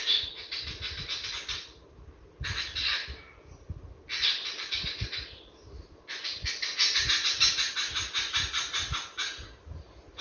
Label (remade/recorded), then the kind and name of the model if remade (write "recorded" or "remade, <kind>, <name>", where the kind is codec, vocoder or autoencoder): recorded